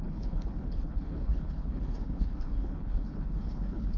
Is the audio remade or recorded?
remade